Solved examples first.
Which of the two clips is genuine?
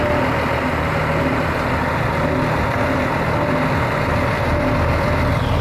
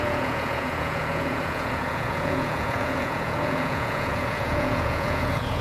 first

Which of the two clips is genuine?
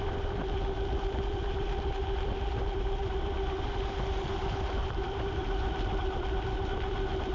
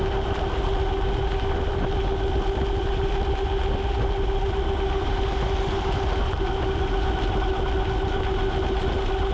second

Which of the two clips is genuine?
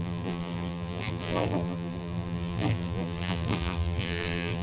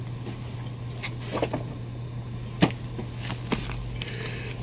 second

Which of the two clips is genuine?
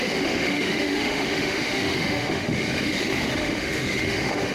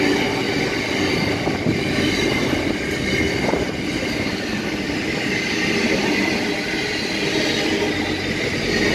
second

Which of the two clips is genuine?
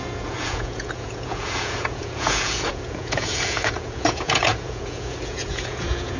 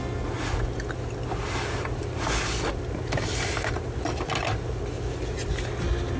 second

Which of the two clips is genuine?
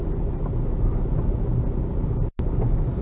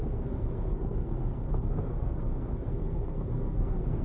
first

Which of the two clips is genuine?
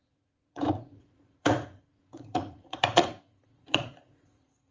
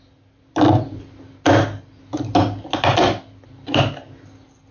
second